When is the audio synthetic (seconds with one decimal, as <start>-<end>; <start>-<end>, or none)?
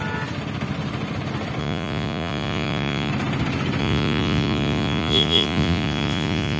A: 1.6-3.1; 3.8-6.6